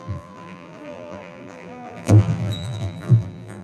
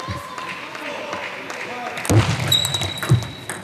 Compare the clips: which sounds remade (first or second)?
first